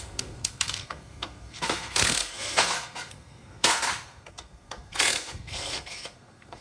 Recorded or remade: remade